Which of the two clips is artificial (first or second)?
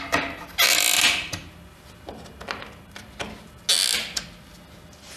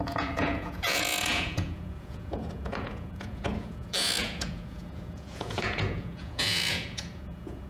second